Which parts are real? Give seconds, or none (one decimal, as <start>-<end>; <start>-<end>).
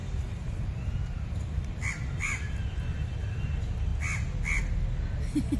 1.9-5.6